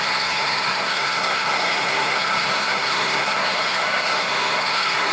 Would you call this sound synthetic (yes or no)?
yes